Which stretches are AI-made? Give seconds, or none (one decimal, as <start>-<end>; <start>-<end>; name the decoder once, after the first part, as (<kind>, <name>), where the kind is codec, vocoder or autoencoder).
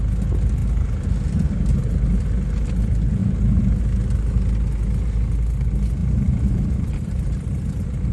6.0-8.1 (vocoder, BigVGAN v2)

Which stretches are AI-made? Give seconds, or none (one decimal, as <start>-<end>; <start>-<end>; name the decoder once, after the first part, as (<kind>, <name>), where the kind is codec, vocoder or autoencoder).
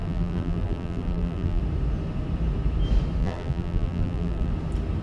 0.0-1.6 (vocoder, BigVGAN v2); 3.2-4.5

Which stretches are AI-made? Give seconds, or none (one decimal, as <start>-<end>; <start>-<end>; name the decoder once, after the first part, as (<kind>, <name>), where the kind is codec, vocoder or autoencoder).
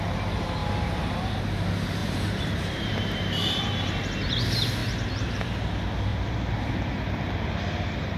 0.6-1.2 (vocoder, BigVGAN v2); 2.0-3.7; 4.8-5.3; 6.1-6.8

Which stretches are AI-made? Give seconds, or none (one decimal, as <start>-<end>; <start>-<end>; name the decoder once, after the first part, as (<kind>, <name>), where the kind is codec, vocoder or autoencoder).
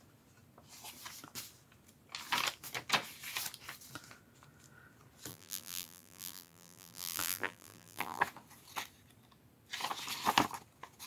5.3-8.2 (vocoder, BigVGAN v2)